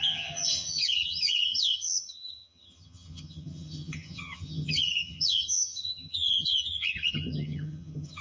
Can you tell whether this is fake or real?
fake